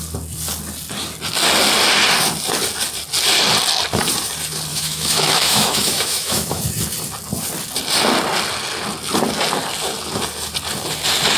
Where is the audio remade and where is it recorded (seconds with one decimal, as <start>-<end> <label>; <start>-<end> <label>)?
0.0-4.7 recorded; 4.7-6.6 remade; 6.6-11.4 recorded